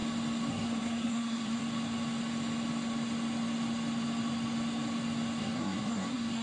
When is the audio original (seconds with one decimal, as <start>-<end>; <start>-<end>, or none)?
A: 0.0-0.5; 1.6-5.4